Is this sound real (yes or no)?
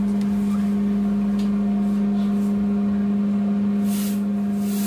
yes